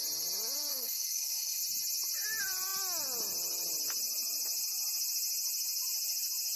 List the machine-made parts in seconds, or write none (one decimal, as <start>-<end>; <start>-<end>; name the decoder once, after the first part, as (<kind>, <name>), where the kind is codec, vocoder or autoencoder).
0.7-1.6 (codec, SNAC)